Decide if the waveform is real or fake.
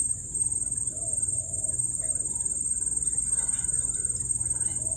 fake